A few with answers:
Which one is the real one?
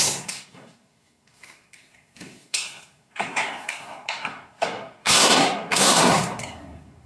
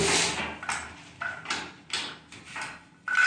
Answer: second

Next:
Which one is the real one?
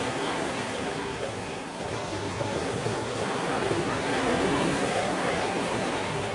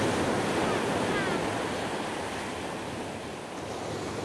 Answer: second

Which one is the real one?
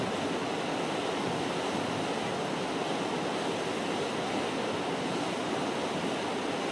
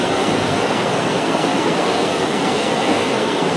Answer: first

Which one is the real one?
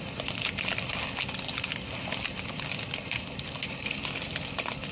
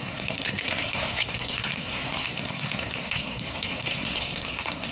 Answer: first